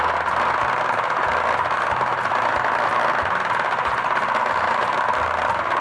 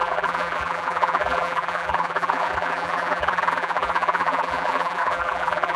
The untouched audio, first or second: first